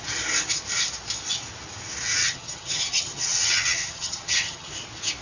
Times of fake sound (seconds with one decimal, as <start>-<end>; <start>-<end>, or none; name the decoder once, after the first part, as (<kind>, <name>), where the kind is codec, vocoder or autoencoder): 2.2-4.7 (vocoder, HiFi-GAN)